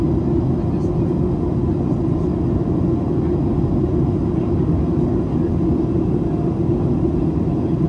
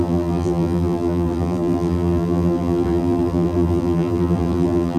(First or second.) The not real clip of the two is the second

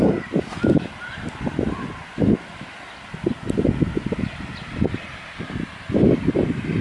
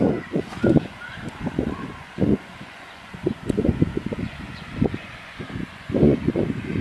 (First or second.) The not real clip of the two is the second